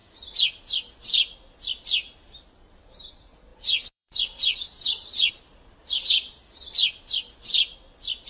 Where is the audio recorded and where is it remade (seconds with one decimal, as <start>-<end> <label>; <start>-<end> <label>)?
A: 0.0-3.1 recorded; 3.1-6.8 remade; 6.8-8.3 recorded